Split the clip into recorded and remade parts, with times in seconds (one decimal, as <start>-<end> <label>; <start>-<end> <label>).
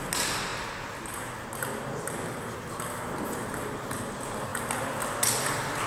0.0-5.9 recorded